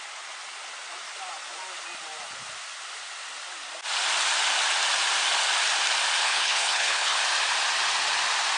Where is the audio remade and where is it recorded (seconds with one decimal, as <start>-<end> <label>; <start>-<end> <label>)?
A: 0.0-6.2 recorded; 6.2-7.2 remade; 7.2-8.6 recorded